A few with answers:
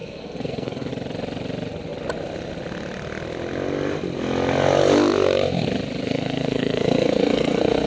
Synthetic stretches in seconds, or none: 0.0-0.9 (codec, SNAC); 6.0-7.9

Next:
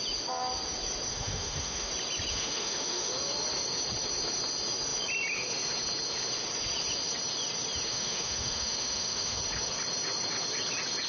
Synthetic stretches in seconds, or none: 1.1-1.9 (autoencoder, DAC-VAE); 2.3-3.1; 7.9-9.4